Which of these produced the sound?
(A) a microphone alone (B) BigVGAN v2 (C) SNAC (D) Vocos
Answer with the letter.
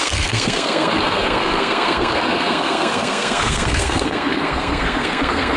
C